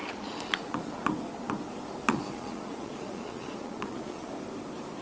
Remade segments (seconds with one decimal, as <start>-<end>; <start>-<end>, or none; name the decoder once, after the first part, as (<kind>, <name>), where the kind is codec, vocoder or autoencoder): 0.0-1.0 (vocoder, Vocos); 2.0-4.3